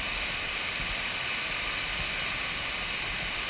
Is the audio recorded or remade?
recorded